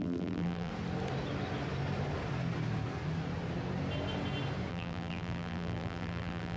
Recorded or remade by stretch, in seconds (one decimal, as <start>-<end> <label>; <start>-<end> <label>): 0.0-0.7 remade; 0.7-4.7 recorded; 4.7-6.6 remade

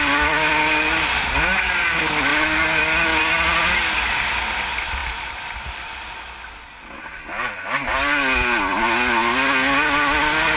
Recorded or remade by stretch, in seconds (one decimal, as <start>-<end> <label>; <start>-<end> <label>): 0.0-10.6 recorded

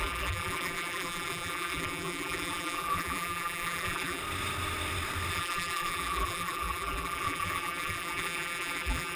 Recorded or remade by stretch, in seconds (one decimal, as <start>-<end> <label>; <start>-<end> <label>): 0.0-4.2 remade; 4.2-5.3 recorded; 5.3-9.2 remade

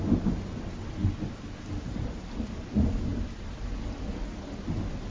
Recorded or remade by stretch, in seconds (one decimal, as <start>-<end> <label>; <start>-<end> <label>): 0.0-5.1 recorded

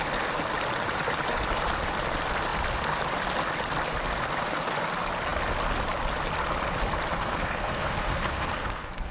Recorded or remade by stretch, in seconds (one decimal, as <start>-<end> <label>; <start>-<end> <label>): 0.0-7.2 recorded; 7.2-9.1 remade

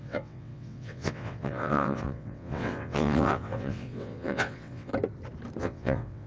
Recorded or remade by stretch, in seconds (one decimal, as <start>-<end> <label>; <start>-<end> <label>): 0.0-4.9 remade; 4.9-5.6 recorded; 5.6-6.3 remade

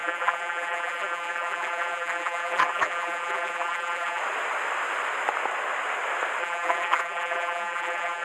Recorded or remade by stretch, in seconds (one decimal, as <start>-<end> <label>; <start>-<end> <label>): 0.0-4.2 remade; 4.2-6.4 recorded; 6.4-8.2 remade

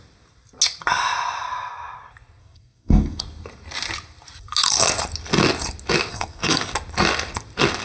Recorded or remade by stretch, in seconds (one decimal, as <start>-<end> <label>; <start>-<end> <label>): 0.0-2.4 recorded; 2.4-3.2 remade; 3.2-6.1 recorded; 6.1-6.7 remade; 6.7-7.8 recorded